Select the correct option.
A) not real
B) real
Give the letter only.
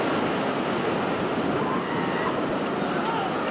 B